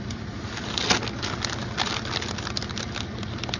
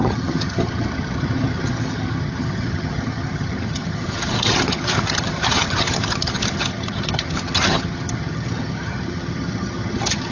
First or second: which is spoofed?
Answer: second